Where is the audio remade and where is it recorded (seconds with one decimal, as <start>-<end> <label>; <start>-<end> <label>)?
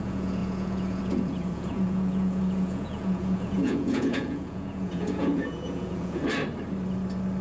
0.0-6.2 remade; 6.2-7.4 recorded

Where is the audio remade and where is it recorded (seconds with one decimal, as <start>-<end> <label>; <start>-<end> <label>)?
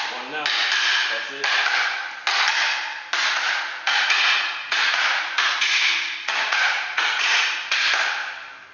0.0-3.2 recorded; 3.2-8.0 remade; 8.0-8.7 recorded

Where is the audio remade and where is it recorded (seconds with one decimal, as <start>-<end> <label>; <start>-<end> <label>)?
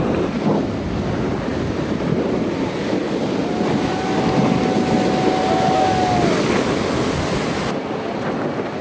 0.0-8.8 recorded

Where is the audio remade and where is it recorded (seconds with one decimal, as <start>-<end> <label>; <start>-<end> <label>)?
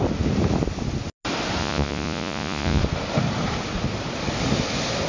0.0-1.6 recorded; 1.6-2.8 remade; 2.8-5.1 recorded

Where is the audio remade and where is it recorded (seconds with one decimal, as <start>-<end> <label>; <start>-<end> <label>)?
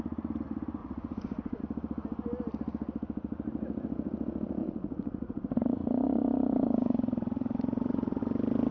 0.0-0.8 recorded; 0.8-1.6 remade; 1.6-4.6 recorded; 4.6-8.2 remade; 8.2-8.7 recorded